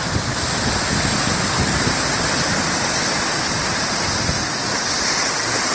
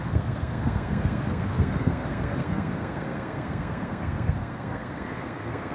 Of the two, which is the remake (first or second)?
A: second